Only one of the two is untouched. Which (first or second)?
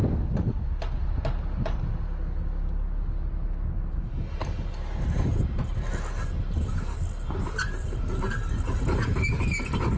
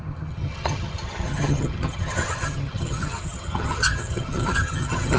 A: first